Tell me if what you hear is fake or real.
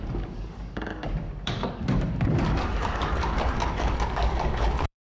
fake